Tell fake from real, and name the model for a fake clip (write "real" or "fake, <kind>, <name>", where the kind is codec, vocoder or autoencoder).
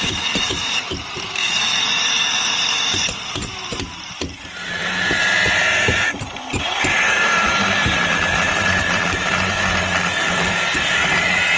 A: fake, vocoder, BigVGAN v2